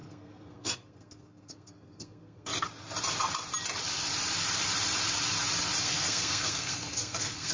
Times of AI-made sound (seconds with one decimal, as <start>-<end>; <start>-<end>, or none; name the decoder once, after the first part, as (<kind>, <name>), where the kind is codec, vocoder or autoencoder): 0.0-2.5 (codec, SNAC); 5.8-7.5